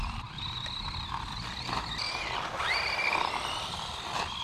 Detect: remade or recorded recorded